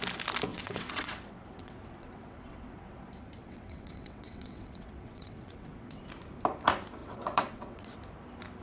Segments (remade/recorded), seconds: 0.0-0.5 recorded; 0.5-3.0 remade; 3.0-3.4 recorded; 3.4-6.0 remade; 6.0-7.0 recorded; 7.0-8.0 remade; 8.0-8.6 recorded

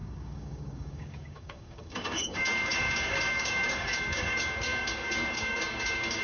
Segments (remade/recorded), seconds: 0.0-6.2 remade

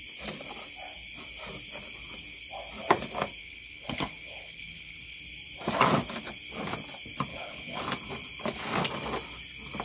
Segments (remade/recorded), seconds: 0.0-3.4 recorded; 3.4-5.2 remade; 5.2-7.3 recorded; 7.3-7.8 remade; 7.8-9.8 recorded

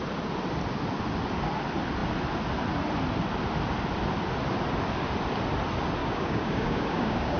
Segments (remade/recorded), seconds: 0.0-6.0 recorded; 6.0-7.4 remade

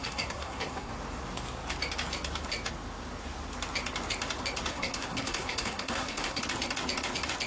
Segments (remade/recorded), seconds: 0.0-0.9 remade; 0.9-4.7 recorded; 4.7-6.4 remade; 6.4-7.5 recorded

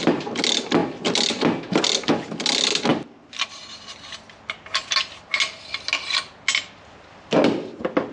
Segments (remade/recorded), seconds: 0.0-8.1 recorded